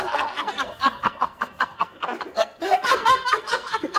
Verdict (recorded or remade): remade